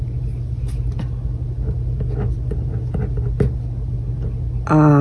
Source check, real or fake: real